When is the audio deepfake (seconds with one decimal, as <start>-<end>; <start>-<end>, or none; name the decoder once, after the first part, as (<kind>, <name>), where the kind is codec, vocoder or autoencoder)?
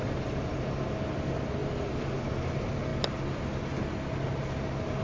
none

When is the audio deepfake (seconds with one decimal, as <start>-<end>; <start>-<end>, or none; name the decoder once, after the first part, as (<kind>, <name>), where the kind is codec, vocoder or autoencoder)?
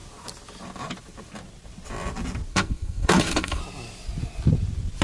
2.5-3.6 (codec, SNAC)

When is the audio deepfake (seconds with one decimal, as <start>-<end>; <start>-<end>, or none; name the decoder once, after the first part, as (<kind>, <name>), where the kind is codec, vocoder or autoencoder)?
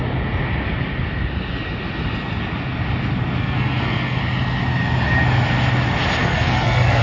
3.4-4.2 (codec, SNAC); 6.2-7.0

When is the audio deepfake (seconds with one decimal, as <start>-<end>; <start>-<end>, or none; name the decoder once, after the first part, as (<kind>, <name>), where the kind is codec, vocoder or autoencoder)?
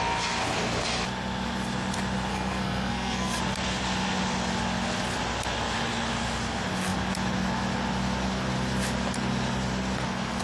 2.3-3.4 (codec, SNAC)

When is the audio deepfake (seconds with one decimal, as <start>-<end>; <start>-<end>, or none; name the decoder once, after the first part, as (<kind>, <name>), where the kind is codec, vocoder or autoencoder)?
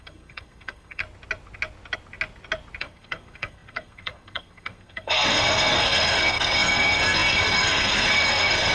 0.0-1.0 (codec, SNAC); 2.8-8.7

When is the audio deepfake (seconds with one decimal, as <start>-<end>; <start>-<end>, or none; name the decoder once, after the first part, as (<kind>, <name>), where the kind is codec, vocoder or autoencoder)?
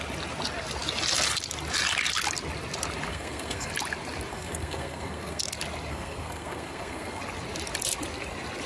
3.1-3.7 (codec, SNAC); 4.3-5.4; 5.9-7.2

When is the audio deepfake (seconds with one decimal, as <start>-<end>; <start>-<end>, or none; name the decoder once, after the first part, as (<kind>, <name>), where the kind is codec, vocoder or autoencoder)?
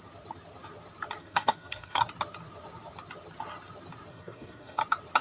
1.2-2.0 (codec, SNAC); 4.1-4.8